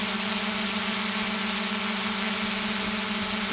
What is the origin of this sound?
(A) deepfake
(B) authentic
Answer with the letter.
B